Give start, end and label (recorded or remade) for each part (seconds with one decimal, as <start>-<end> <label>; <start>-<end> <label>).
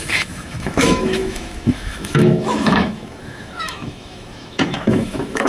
0.0-5.5 remade